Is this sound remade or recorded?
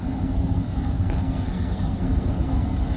remade